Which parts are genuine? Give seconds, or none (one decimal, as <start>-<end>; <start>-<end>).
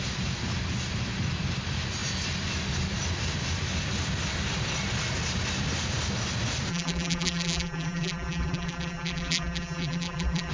0.0-6.7